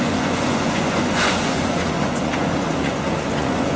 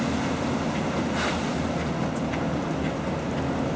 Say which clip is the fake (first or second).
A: first